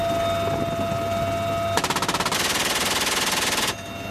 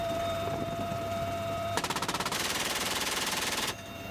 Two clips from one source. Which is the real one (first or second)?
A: first